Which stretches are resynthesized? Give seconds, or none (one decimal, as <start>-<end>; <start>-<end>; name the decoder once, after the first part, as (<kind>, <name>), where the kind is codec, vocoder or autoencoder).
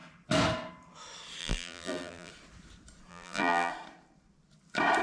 1.4-2.3 (vocoder, BigVGAN v2); 3.1-3.7